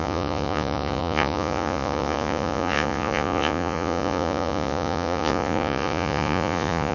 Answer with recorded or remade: remade